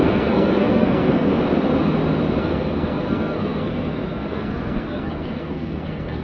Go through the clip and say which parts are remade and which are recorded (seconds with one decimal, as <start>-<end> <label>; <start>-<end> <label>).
0.0-1.3 remade; 1.3-2.4 recorded; 2.4-6.2 remade